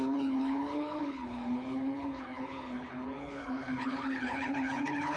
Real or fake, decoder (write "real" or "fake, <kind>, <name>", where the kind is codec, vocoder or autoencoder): fake, codec, HILCodec